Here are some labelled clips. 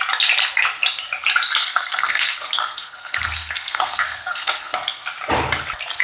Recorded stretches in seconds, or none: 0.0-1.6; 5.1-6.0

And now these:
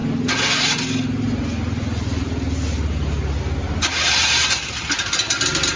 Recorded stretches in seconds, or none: 0.0-5.8

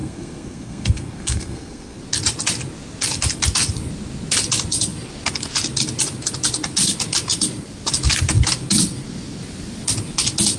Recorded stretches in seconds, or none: 2.0-10.6

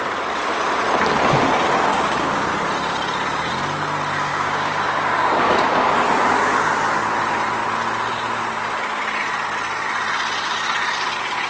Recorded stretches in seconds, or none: 0.0-1.9; 2.5-4.3; 5.9-11.5

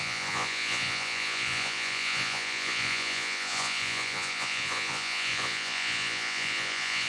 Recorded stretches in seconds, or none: none

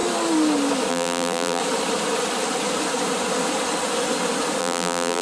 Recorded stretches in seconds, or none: 0.0-0.9; 1.6-4.6

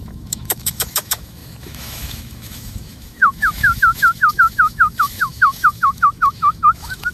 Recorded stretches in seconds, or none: none

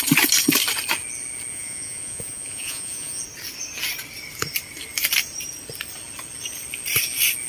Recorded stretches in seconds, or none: 0.0-1.5; 3.2-7.5